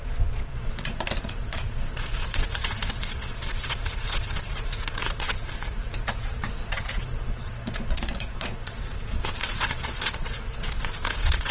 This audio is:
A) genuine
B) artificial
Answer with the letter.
B